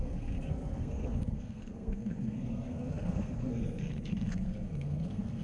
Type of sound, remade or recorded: remade